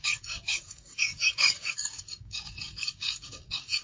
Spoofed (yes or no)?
yes